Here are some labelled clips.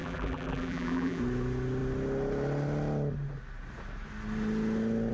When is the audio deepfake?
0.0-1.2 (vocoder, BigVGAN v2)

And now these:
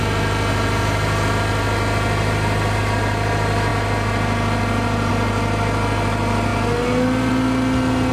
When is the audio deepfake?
none

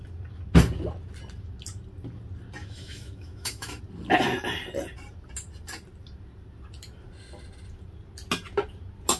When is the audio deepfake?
2.6-3.8 (autoencoder, DAC-VAE)